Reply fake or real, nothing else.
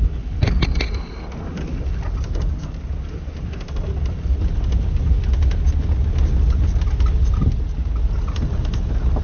real